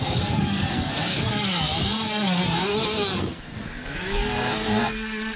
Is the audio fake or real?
fake